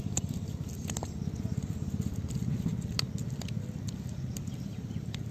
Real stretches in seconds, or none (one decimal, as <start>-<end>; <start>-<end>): 0.0-5.3